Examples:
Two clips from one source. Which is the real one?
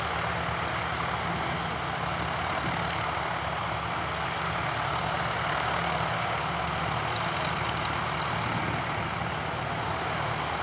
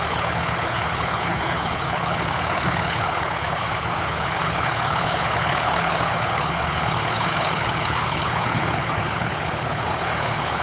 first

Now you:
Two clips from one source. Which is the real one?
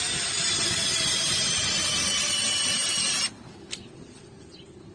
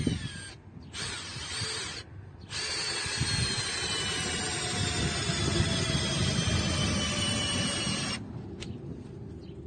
second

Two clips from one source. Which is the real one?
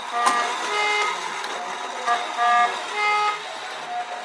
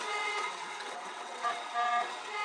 first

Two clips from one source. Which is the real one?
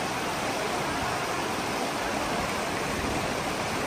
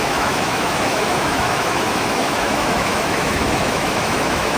first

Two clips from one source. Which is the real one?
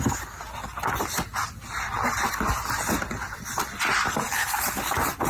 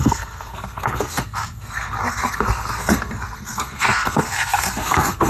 first